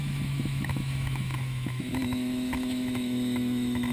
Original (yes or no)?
no